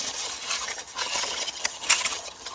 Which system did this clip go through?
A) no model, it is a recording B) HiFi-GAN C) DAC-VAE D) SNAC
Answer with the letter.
B